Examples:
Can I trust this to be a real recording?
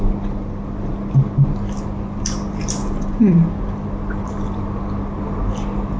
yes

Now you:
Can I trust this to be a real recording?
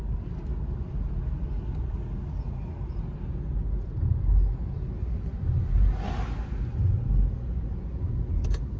yes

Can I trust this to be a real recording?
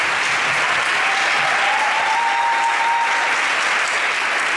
yes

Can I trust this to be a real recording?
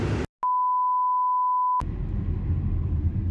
yes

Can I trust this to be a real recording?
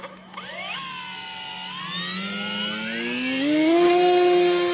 yes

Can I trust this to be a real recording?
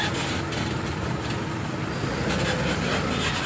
yes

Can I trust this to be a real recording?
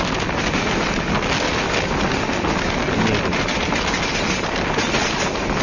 yes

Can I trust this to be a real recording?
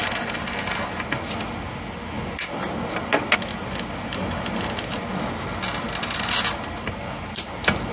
yes